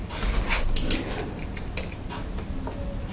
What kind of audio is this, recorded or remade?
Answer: recorded